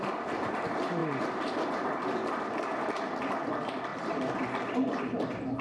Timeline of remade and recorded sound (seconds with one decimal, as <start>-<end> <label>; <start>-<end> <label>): 0.0-5.6 recorded